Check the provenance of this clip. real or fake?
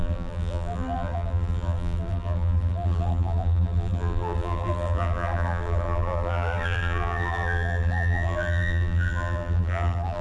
fake